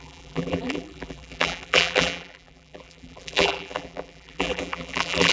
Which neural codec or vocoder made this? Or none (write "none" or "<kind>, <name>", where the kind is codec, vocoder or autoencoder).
vocoder, BigVGAN v2